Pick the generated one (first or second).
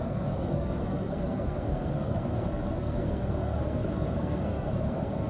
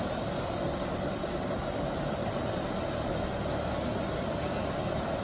first